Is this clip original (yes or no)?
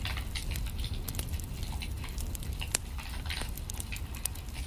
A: yes